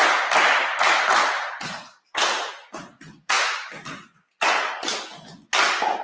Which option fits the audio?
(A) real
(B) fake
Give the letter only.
A